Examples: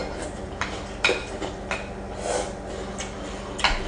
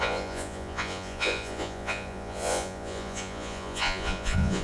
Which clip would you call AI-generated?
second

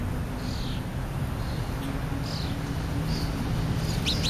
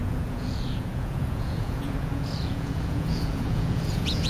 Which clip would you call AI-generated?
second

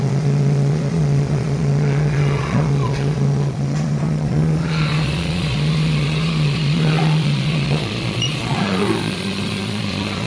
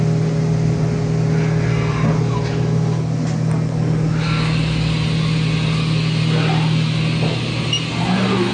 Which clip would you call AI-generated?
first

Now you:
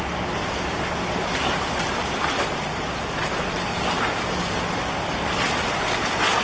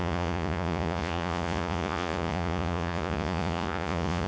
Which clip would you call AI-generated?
second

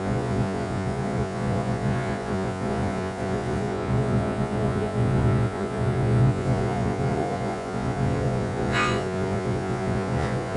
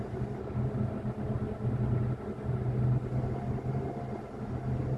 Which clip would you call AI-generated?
first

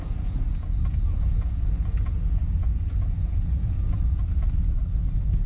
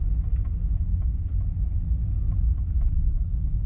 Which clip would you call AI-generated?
first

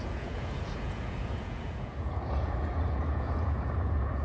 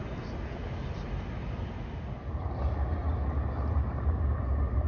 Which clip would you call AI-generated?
first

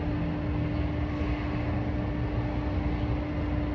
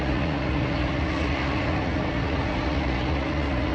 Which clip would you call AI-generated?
second